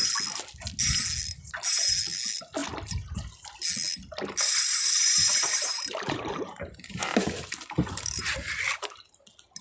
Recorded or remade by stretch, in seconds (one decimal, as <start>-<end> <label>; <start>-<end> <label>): 0.0-5.3 recorded; 5.3-9.1 remade; 9.1-9.6 recorded